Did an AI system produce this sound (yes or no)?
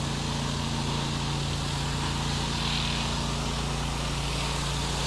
no